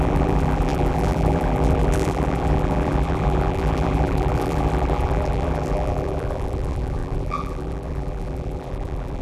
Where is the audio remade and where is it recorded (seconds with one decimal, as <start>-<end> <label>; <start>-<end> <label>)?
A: 0.0-9.2 remade